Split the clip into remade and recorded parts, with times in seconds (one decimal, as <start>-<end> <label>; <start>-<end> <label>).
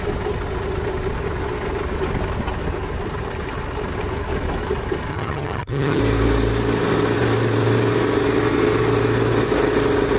0.0-5.1 recorded; 5.1-6.0 remade; 6.0-10.2 recorded